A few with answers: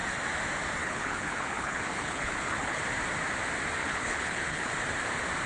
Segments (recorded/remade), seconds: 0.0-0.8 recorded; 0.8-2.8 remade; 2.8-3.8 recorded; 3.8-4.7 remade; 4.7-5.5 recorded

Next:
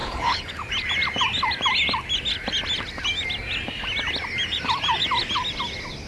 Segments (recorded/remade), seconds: 0.0-0.5 remade; 0.5-6.1 recorded

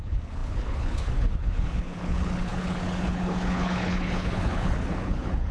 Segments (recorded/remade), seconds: 0.0-5.5 remade